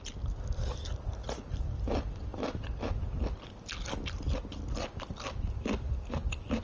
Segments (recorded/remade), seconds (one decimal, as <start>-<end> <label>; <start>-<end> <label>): 0.0-6.6 recorded